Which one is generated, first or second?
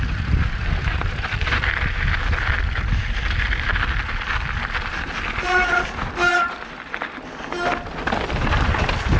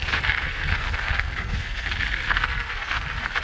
second